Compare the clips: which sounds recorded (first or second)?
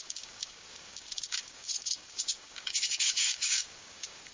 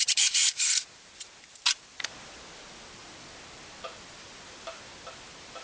second